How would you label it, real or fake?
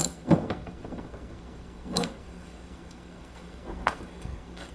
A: fake